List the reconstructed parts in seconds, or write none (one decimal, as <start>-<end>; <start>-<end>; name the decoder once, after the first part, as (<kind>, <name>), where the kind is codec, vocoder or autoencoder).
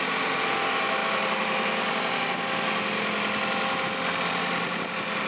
none